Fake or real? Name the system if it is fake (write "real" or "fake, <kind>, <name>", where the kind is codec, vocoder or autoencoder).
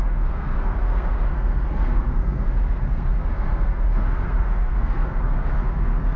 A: fake, codec, SNAC